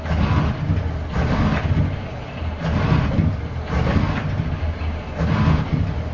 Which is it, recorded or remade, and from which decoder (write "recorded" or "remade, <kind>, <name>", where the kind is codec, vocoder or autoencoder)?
recorded